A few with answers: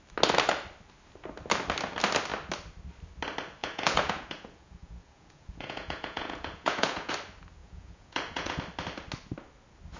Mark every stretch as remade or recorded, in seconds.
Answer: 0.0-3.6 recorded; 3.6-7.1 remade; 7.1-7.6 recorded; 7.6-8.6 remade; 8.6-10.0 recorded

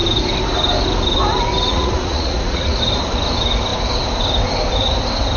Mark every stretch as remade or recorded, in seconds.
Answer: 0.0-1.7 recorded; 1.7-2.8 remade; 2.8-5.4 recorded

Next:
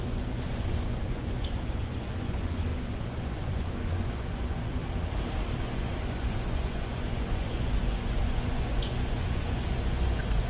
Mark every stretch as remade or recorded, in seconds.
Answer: 0.0-4.8 remade; 4.8-5.6 recorded; 5.6-10.5 remade

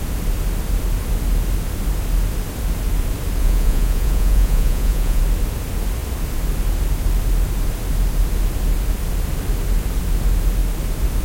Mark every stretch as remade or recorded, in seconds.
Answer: 0.0-3.4 recorded; 3.4-5.2 remade; 5.2-11.2 recorded